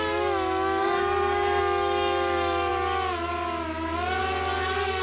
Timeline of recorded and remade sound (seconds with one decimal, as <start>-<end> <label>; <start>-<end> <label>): 0.0-0.8 recorded; 0.8-1.6 remade; 1.6-5.0 recorded